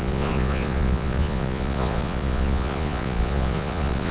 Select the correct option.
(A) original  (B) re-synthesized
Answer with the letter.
B